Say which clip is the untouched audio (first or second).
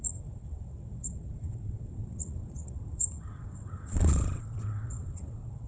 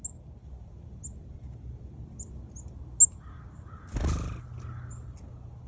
second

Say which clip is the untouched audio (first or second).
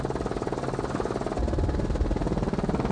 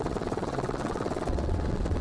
first